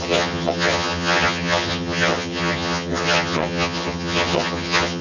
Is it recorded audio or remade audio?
remade